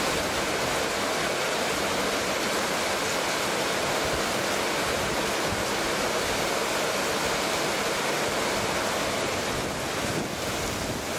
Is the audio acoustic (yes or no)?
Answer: yes